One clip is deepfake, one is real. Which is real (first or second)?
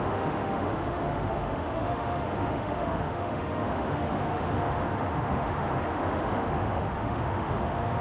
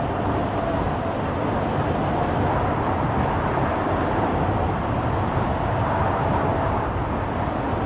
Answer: second